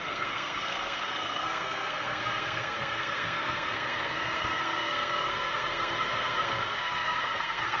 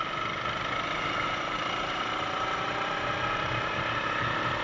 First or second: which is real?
second